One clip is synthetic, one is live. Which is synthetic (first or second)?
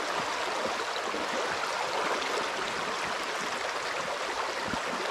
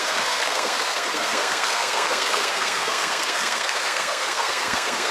second